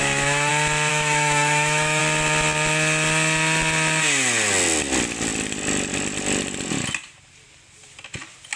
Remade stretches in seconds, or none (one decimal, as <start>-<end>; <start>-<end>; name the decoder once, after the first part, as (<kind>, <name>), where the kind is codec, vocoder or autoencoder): 0.0-0.5 (autoencoder, DAC-VAE); 0.9-2.0